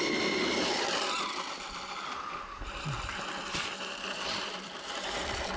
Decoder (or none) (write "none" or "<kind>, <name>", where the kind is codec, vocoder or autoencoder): vocoder, BigVGAN v2